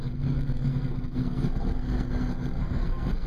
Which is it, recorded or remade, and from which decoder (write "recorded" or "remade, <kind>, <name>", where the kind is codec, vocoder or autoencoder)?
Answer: remade, codec, SNAC